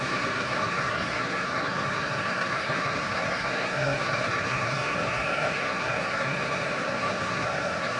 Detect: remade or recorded remade